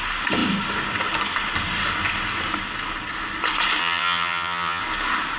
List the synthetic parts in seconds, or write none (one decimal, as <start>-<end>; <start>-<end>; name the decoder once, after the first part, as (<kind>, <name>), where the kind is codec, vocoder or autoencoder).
3.8-4.8 (vocoder, HiFi-GAN)

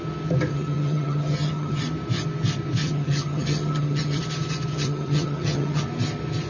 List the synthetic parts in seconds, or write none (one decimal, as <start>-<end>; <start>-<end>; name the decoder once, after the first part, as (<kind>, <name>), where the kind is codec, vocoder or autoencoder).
0.5-1.8 (vocoder, HiFi-GAN); 2.8-4.2; 4.7-5.8

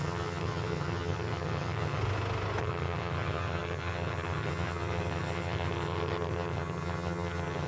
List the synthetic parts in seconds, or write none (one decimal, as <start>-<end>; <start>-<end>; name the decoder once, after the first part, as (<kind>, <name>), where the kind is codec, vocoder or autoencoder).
0.0-2.0 (vocoder, HiFi-GAN); 2.6-7.7

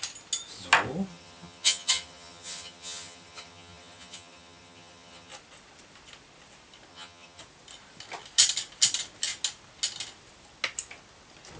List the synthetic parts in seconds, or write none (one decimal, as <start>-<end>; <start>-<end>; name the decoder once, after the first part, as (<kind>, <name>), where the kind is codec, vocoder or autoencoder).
1.1-5.3 (vocoder, HiFi-GAN); 6.9-7.4

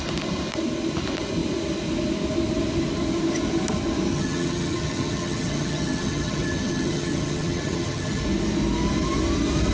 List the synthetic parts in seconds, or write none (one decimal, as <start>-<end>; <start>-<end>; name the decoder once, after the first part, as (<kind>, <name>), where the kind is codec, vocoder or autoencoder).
4.1-8.2 (vocoder, HiFi-GAN)

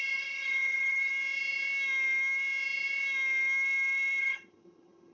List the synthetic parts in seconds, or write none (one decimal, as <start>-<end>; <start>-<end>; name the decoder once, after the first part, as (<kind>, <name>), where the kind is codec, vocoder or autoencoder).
0.0-1.1 (vocoder, HiFi-GAN); 4.2-5.1

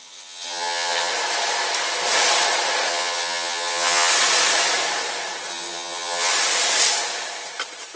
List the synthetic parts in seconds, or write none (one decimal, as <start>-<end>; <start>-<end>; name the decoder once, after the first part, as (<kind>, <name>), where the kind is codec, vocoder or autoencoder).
0.0-1.1 (vocoder, HiFi-GAN); 2.9-4.1; 5.5-6.3

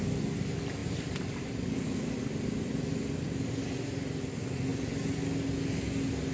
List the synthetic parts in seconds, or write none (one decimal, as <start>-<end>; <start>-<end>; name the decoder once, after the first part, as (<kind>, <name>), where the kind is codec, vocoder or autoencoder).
none